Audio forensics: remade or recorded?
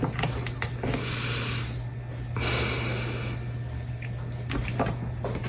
recorded